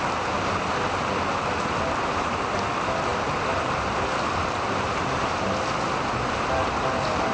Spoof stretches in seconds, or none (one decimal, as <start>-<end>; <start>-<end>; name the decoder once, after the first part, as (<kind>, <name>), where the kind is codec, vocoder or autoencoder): none